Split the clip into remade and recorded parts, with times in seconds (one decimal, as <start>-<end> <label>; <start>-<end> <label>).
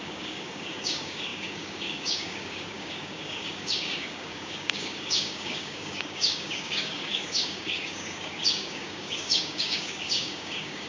0.0-10.9 remade